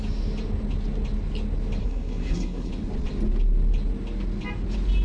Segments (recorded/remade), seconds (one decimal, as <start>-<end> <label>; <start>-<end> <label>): 0.0-1.8 recorded; 1.8-2.7 remade; 2.7-5.0 recorded